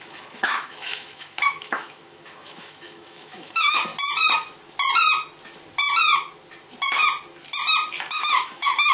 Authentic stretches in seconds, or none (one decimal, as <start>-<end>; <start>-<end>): 3.9-8.1